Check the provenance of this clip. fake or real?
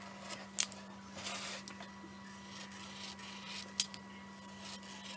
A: real